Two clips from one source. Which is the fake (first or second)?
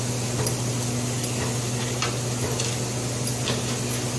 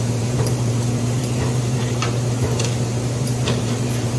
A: second